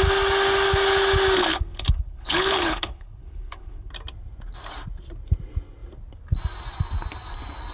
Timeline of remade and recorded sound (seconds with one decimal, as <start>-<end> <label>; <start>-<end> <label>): 0.0-1.5 recorded; 1.5-3.9 remade; 3.9-7.7 recorded